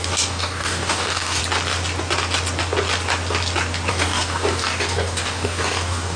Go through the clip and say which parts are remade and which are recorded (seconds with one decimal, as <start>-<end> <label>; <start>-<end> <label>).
0.0-1.4 remade; 1.4-3.9 recorded; 3.9-6.2 remade